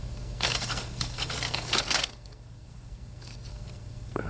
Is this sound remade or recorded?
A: remade